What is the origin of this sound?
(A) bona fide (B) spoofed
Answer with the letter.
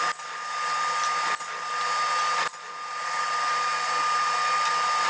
A